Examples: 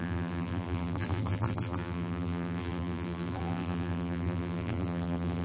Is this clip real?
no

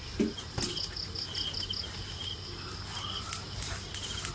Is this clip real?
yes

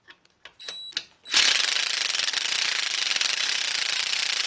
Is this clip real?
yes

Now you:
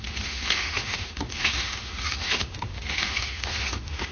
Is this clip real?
no